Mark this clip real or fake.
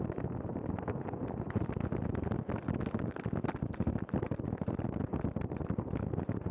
real